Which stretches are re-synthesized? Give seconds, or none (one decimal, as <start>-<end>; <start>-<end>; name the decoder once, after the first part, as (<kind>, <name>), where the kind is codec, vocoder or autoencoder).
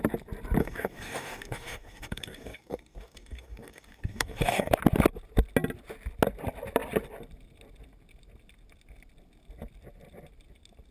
0.6-4.7 (codec, DAC)